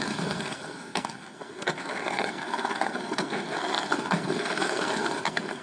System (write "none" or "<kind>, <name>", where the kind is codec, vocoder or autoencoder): codec, SNAC